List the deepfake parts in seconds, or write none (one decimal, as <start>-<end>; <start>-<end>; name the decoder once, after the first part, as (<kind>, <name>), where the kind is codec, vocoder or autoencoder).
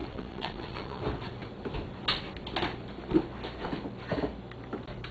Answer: 0.0-1.0 (vocoder, WaveNeXt)